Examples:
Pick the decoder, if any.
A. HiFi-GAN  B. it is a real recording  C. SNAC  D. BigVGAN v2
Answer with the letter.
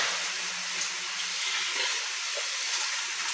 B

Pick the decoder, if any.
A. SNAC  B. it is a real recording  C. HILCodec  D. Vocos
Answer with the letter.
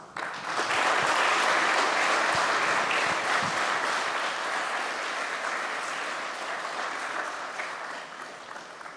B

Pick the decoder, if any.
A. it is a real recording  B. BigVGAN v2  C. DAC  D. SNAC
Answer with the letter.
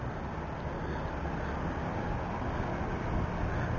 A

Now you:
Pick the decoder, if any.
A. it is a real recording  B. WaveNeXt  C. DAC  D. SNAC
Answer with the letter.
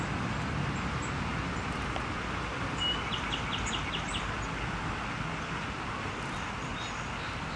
A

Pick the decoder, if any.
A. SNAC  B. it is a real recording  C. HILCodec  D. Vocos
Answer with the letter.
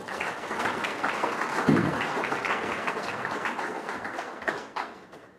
A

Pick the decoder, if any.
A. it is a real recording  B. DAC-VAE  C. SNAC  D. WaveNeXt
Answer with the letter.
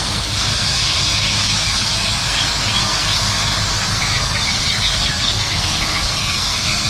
C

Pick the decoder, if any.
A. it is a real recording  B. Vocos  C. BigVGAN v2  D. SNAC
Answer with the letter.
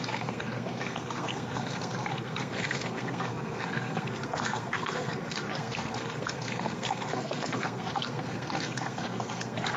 D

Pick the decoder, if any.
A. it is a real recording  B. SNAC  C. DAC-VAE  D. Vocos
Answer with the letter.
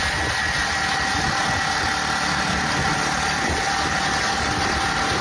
A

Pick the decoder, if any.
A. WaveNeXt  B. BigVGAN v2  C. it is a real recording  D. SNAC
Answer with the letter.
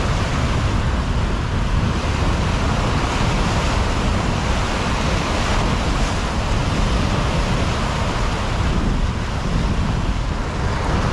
C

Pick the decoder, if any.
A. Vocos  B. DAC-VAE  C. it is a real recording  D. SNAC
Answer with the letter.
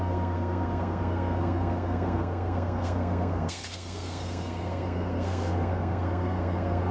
D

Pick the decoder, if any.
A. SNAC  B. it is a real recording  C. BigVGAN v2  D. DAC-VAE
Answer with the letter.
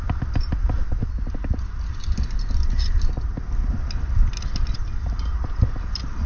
B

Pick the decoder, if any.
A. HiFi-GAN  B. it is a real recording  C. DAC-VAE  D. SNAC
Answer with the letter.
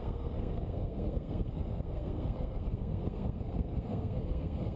D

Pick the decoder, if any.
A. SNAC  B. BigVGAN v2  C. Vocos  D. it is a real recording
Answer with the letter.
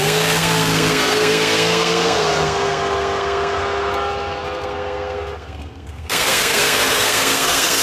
A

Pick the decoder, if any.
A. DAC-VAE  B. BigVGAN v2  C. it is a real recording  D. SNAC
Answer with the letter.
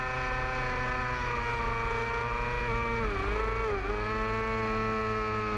C